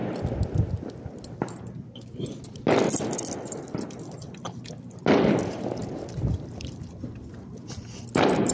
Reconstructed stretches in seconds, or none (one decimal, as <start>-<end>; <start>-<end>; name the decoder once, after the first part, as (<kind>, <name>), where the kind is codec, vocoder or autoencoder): 5.8-7.5 (vocoder, BigVGAN v2)

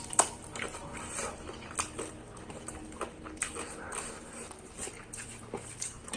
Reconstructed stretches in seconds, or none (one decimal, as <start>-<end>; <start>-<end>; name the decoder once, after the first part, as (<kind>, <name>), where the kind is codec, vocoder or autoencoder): none